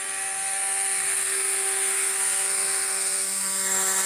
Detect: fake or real fake